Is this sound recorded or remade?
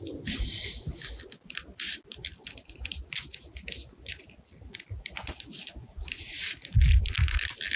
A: recorded